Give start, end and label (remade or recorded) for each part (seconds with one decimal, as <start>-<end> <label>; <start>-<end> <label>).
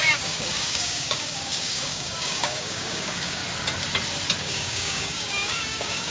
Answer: 0.0-3.4 remade; 3.4-4.4 recorded; 4.4-6.1 remade